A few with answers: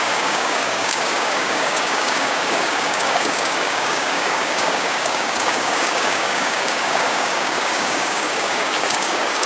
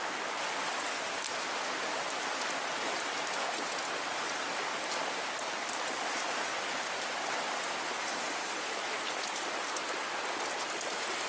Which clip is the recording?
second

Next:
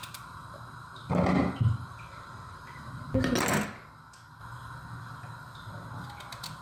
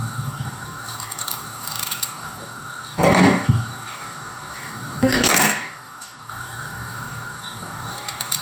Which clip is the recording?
first